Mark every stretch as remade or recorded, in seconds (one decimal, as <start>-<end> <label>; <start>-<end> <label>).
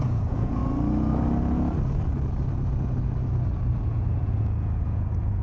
0.0-0.6 remade; 0.6-3.8 recorded; 3.8-5.4 remade